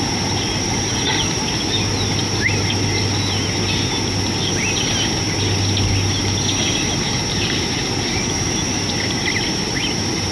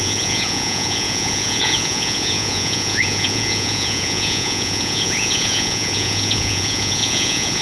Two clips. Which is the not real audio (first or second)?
second